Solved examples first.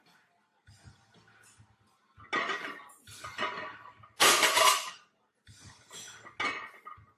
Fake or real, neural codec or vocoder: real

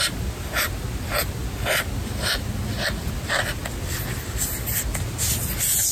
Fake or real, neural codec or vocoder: real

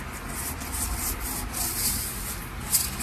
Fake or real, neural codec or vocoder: real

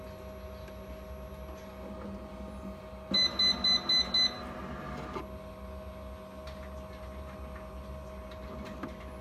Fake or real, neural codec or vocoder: real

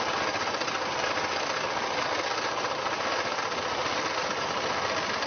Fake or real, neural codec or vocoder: real